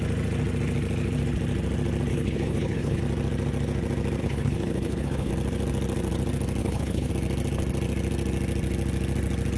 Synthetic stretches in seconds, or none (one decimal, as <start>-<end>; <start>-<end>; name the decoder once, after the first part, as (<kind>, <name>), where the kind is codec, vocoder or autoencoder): 2.1-3.0 (codec, HILCodec); 4.2-5.3; 6.6-7.1